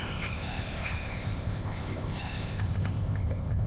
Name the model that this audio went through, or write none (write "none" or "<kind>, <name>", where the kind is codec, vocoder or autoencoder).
codec, ZipCodec